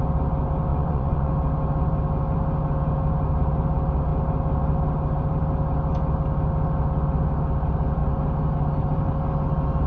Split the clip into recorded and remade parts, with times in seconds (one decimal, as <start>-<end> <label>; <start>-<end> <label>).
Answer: 0.0-0.7 recorded; 0.7-1.3 remade; 1.3-9.9 recorded